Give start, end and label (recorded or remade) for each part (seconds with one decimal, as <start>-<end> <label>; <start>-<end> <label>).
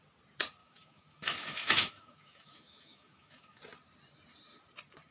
0.0-0.6 recorded; 0.6-3.6 remade; 3.6-5.1 recorded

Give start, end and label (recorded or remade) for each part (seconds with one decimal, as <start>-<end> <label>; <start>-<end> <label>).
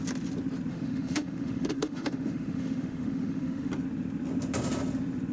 0.0-0.7 recorded; 0.7-3.7 remade; 3.7-5.3 recorded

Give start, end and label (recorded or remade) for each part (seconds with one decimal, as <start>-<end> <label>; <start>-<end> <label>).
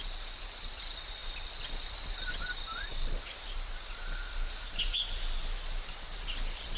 0.0-6.8 recorded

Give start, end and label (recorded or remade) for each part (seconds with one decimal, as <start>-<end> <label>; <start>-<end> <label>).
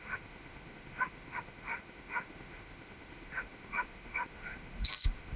0.0-5.4 remade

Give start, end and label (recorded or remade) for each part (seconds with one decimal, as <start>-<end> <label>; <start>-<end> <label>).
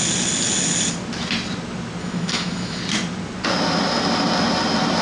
0.0-2.0 recorded; 2.0-2.8 remade; 2.8-5.0 recorded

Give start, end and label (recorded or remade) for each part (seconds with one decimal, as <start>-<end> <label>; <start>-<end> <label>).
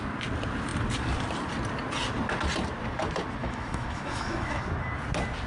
0.0-3.4 recorded; 3.4-4.6 remade; 4.6-5.5 recorded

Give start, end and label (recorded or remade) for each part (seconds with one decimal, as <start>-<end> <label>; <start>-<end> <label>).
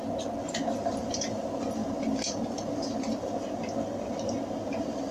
0.0-5.1 recorded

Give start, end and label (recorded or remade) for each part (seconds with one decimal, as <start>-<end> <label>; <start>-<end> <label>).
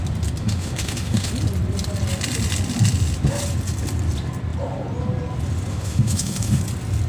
0.0-0.4 recorded; 0.4-1.3 remade; 1.3-5.7 recorded; 5.7-6.6 remade; 6.6-7.1 recorded